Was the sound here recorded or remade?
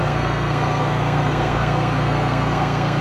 remade